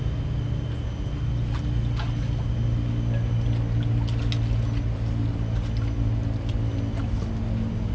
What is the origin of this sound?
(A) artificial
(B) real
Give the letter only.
B